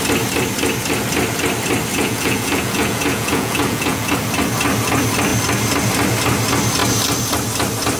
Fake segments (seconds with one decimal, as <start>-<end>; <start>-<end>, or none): 1.9-4.1